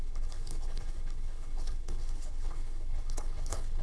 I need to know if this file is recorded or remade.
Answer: remade